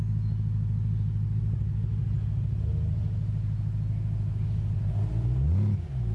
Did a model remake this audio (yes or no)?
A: no